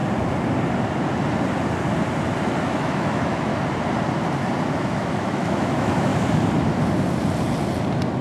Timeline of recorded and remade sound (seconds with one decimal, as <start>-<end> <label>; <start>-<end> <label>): 0.0-2.6 recorded; 2.6-3.5 remade; 3.5-4.7 recorded; 4.7-6.1 remade; 6.1-8.2 recorded